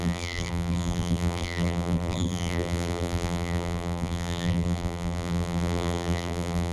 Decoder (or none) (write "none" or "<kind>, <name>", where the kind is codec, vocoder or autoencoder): vocoder, BigVGAN v2